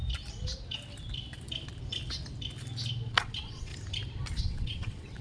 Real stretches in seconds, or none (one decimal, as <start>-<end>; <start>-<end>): 0.0-3.1; 3.7-4.4